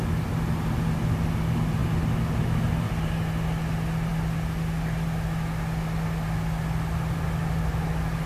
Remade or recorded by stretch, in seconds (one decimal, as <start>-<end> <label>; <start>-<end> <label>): 0.0-8.3 recorded